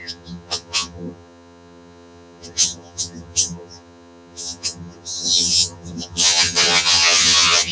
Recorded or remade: remade